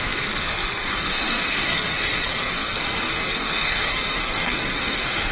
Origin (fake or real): fake